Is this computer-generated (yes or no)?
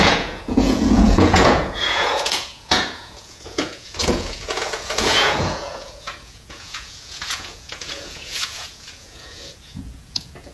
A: yes